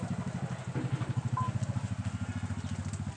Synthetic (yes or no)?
no